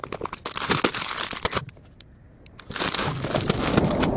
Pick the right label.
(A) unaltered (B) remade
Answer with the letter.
A